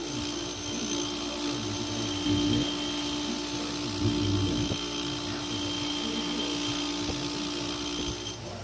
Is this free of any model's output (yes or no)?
yes